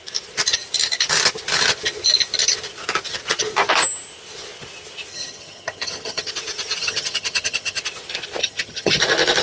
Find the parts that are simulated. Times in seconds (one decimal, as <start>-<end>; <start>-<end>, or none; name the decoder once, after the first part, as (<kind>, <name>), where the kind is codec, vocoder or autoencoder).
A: 5.1-6.3 (vocoder, HiFi-GAN); 6.8-7.8; 8.4-9.0